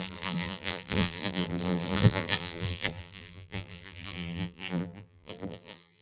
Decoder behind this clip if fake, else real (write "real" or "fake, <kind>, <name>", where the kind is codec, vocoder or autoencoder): fake, vocoder, BigVGAN v2